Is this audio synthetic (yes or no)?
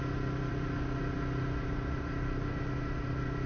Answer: no